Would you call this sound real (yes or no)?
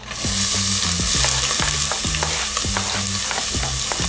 yes